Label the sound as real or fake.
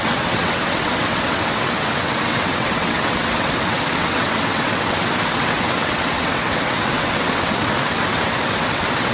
fake